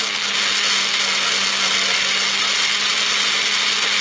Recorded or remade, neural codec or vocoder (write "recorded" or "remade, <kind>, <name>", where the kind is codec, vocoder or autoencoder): recorded